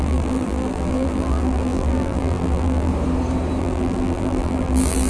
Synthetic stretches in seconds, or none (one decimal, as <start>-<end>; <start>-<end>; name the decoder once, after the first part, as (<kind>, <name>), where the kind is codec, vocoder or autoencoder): 0.0-2.9 (vocoder, BigVGAN v2); 3.6-5.1